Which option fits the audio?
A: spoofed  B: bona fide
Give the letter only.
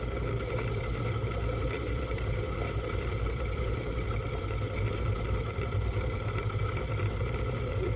A